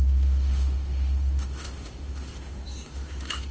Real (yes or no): no